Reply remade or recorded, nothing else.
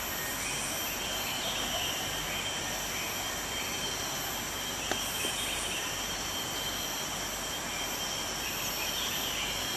recorded